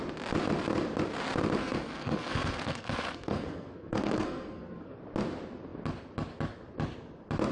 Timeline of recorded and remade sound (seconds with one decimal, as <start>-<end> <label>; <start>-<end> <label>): 0.0-1.6 recorded; 1.6-5.0 remade; 5.0-7.5 recorded